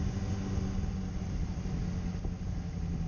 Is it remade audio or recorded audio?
recorded